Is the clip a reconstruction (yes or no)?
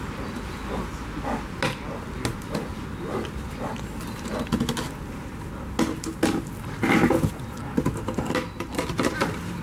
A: no